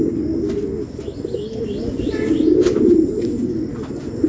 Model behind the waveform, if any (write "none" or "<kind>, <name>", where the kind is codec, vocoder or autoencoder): none